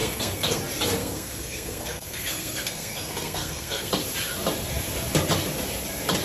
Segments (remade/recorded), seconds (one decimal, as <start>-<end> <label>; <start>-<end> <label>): 0.0-0.6 remade; 0.6-1.0 recorded; 1.0-3.9 remade; 3.9-6.2 recorded